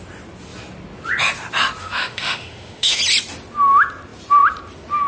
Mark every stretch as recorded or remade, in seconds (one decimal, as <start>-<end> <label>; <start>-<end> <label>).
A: 0.0-1.8 recorded; 1.8-3.0 remade; 3.0-5.1 recorded